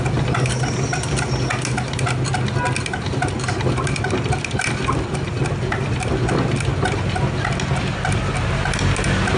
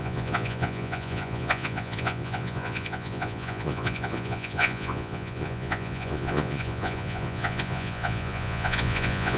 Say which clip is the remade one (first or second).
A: second